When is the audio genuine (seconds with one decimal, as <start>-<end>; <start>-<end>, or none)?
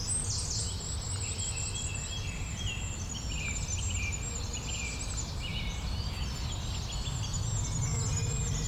0.0-8.7